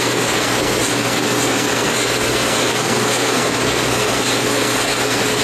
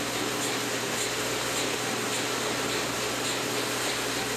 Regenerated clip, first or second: first